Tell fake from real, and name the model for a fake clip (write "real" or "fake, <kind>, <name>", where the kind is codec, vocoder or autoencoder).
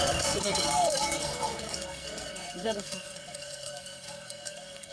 fake, codec, SNAC